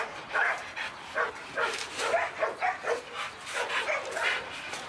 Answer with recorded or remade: recorded